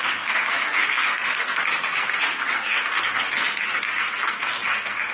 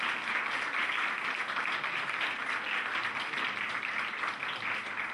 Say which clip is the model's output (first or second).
first